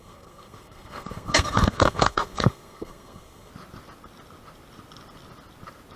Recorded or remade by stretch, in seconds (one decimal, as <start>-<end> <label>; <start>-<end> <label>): 0.0-3.5 remade; 3.5-6.0 recorded